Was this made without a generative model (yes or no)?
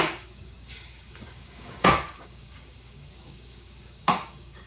no